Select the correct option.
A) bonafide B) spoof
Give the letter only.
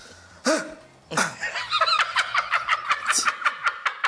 A